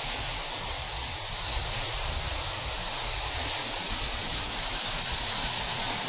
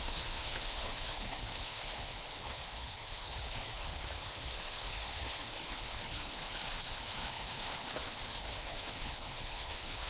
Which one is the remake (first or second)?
second